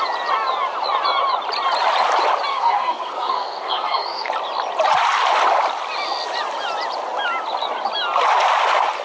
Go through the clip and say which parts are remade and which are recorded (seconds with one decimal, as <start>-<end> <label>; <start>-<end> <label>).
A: 0.0-2.5 recorded; 2.5-4.3 remade; 4.3-9.0 recorded

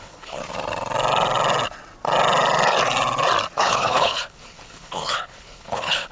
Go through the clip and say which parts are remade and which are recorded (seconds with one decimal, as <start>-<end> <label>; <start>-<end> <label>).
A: 0.0-0.4 remade; 0.4-3.6 recorded; 3.6-6.1 remade

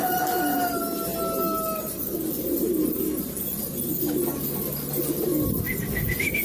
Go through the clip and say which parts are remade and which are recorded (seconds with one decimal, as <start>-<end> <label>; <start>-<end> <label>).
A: 0.0-6.4 recorded

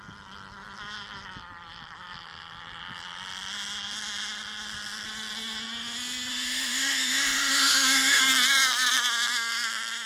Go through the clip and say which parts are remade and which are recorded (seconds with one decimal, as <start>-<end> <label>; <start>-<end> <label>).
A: 0.0-6.3 recorded; 6.3-8.2 remade; 8.2-10.1 recorded

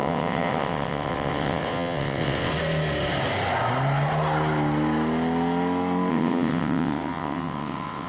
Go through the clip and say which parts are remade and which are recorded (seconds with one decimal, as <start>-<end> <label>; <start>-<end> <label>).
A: 0.0-2.5 remade; 2.5-6.1 recorded; 6.1-8.1 remade

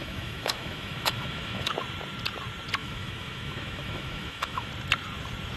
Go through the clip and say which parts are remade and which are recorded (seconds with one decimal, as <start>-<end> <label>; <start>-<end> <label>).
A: 0.0-1.7 remade; 1.7-2.8 recorded; 2.8-4.7 remade; 4.7-5.6 recorded

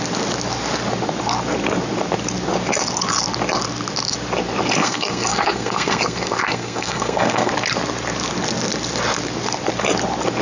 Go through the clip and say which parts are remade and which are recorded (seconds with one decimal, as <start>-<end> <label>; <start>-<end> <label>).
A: 0.0-4.8 recorded; 4.8-7.5 remade; 7.5-10.4 recorded